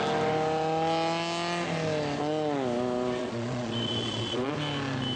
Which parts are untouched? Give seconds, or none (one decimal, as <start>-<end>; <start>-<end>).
0.0-3.2; 4.5-5.2